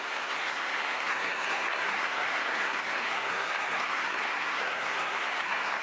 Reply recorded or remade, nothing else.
remade